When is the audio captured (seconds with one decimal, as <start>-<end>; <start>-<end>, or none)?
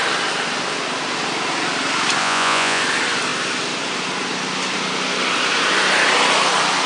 0.0-2.2; 2.8-6.9